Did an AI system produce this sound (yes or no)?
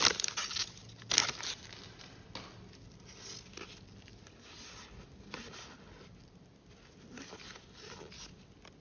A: no